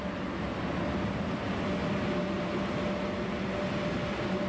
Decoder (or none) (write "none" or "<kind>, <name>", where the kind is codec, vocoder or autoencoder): none